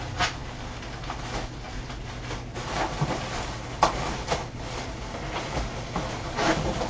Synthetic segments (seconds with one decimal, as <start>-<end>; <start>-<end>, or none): none